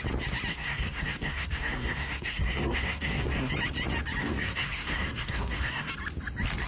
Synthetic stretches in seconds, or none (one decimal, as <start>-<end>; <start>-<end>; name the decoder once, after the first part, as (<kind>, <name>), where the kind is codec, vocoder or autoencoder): 0.5-3.5 (codec, SNAC); 4.2-5.9